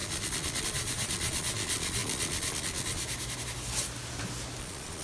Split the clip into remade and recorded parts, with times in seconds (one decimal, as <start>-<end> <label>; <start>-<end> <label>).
0.0-3.0 remade; 3.0-4.6 recorded; 4.6-5.0 remade